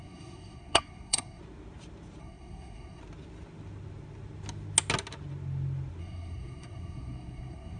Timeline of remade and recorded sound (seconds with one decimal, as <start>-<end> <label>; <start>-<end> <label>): 0.0-1.4 remade; 1.4-2.2 recorded; 2.2-3.0 remade; 3.0-6.0 recorded; 6.0-7.8 remade